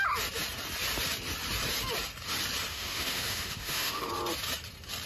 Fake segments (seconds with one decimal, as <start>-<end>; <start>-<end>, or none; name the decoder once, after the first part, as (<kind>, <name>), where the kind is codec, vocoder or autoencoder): 2.7-4.1 (autoencoder, DAC-VAE)